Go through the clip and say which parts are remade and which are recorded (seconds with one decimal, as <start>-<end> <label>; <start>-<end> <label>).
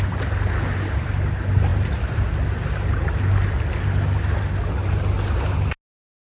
0.0-6.2 recorded